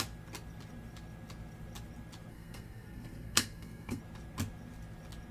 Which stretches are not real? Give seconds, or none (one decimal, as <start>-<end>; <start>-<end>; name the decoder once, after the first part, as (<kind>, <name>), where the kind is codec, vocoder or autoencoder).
2.3-4.0 (codec, SNAC)